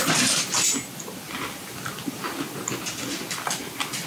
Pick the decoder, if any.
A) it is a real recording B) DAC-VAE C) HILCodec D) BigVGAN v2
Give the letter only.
A